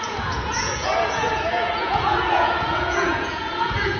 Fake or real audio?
fake